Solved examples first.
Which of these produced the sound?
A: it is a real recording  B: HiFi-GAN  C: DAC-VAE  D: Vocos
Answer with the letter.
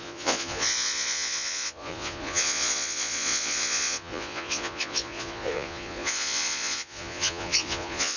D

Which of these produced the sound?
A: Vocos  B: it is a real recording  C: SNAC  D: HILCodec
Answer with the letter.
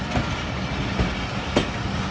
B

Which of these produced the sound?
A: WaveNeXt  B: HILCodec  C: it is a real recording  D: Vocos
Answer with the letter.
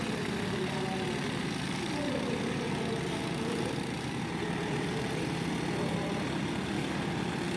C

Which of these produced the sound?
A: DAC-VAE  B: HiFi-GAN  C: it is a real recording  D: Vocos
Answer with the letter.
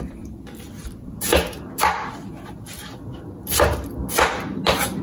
C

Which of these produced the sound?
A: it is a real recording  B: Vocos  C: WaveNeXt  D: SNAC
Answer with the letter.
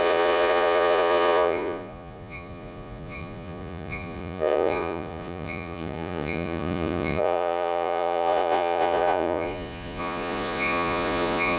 B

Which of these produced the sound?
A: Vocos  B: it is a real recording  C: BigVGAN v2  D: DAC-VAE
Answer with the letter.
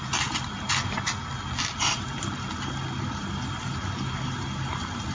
B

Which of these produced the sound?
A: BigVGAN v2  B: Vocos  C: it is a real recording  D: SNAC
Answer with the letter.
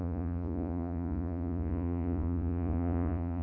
B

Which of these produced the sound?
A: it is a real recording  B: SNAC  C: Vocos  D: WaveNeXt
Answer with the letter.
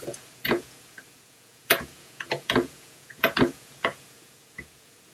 C